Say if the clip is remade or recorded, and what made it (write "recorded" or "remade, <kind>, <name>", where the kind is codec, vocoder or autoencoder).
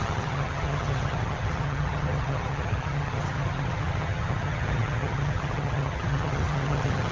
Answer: remade, vocoder, HiFi-GAN